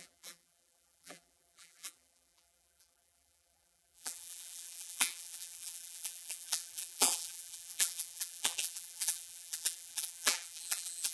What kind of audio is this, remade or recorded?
remade